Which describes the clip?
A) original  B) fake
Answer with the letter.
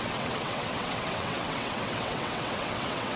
B